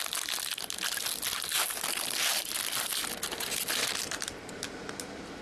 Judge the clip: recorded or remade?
recorded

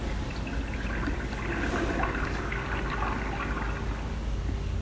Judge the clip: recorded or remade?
recorded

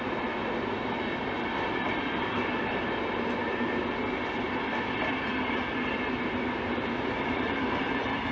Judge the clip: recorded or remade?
recorded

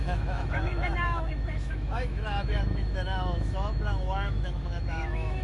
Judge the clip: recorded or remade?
remade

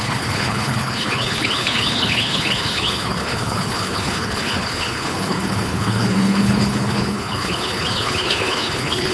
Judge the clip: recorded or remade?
remade